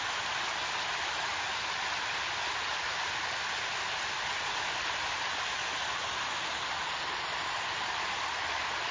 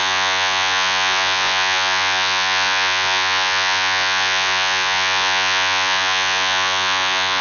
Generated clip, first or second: second